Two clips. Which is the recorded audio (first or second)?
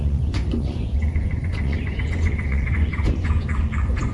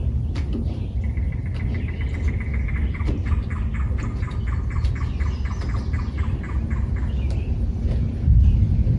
second